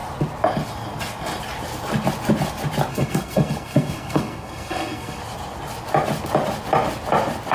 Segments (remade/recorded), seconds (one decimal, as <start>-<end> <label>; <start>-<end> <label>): 0.0-2.9 recorded; 2.9-5.2 remade; 5.2-7.5 recorded